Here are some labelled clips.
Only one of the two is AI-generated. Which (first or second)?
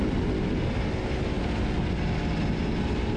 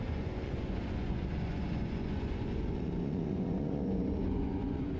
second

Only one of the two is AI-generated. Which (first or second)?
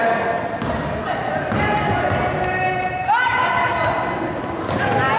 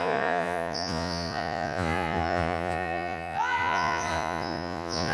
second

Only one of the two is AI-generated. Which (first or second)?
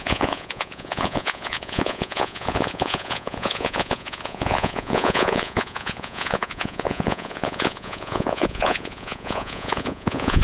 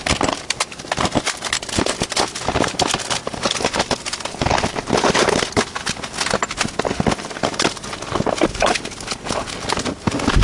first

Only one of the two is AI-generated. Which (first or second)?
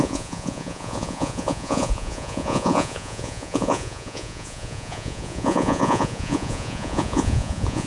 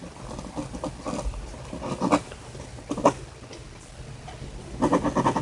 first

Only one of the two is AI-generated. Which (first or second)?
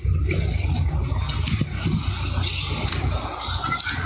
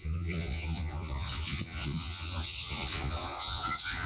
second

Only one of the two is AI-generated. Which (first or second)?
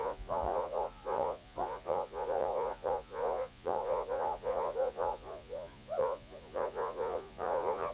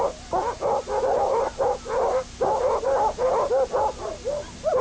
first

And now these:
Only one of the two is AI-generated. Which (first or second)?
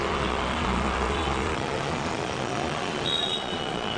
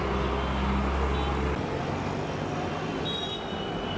first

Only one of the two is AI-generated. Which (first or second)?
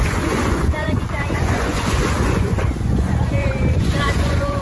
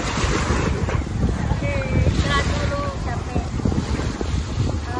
first